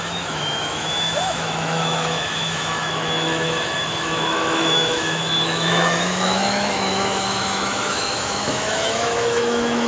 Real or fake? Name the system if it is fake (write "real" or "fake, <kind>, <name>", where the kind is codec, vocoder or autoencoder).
fake, autoencoder, DAC-VAE